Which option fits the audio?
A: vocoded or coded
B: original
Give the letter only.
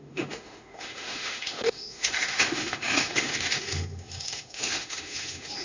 A